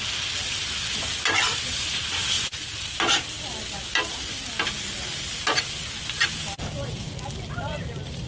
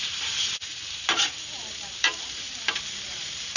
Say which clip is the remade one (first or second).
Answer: second